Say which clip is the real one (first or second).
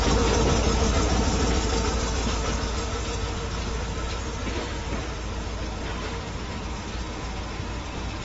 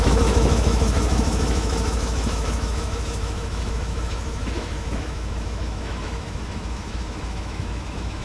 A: first